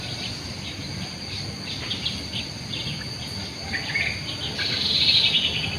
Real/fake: real